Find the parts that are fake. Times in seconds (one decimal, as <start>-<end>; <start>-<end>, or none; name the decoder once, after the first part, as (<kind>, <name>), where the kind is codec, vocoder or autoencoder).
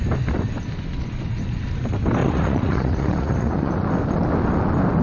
2.2-3.7 (vocoder, Vocos)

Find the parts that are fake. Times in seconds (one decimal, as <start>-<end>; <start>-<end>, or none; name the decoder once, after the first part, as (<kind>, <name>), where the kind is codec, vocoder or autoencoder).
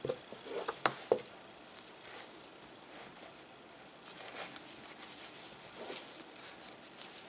none